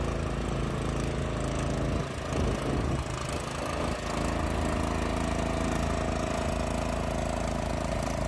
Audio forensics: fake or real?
real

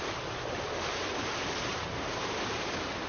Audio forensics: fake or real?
fake